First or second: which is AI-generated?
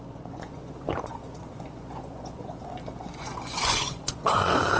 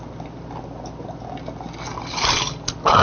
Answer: first